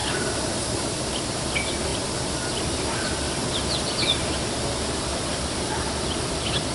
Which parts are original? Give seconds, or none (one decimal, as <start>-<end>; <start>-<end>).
1.4-5.1; 5.7-6.7

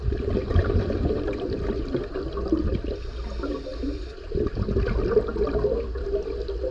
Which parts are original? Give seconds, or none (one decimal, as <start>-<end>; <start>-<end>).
0.0-0.5; 2.7-6.7

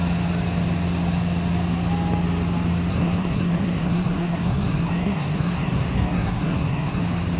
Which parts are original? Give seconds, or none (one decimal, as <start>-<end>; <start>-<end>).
0.0-2.9; 7.0-7.4